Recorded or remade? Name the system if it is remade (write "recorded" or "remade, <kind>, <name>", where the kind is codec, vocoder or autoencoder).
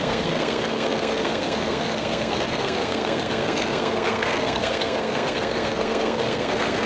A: remade, codec, SNAC